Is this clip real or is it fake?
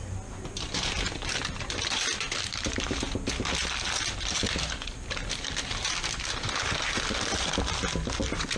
real